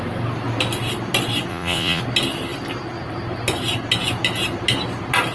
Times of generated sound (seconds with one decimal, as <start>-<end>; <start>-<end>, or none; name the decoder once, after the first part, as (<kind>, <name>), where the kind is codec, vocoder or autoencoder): 1.5-2.0 (vocoder, Vocos)